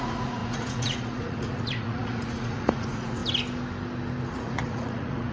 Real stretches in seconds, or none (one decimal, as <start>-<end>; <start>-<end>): 3.2-4.3